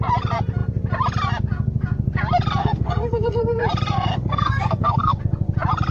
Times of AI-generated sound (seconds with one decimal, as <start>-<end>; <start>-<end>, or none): 2.6-3.6; 4.1-5.2